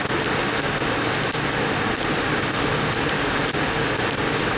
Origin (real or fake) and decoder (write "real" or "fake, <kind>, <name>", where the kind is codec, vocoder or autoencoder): real